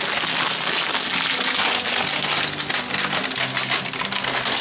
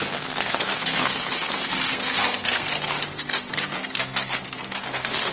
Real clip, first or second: first